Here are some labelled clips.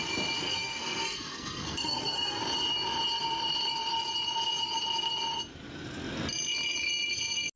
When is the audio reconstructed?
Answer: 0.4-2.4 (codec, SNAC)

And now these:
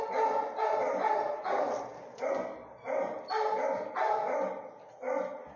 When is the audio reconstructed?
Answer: none

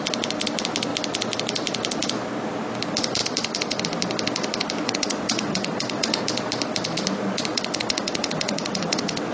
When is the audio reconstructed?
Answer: 4.8-6.2 (vocoder, WaveNeXt); 7.5-9.3